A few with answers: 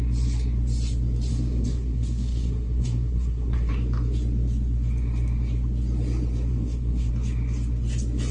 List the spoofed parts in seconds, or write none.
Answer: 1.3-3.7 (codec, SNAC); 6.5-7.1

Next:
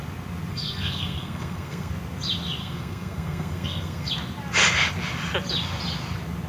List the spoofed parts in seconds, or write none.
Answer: 0.5-1.9 (codec, SNAC); 2.6-4.1

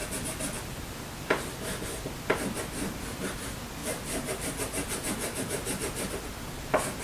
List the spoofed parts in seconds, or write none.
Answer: 3.8-6.6 (vocoder, BigVGAN v2)

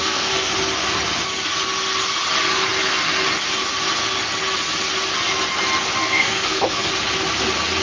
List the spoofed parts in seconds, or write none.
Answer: 0.0-0.5 (codec, SNAC); 6.0-6.9